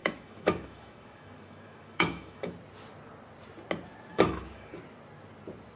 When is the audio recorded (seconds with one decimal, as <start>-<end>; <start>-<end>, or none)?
2.5-4.1; 4.8-5.8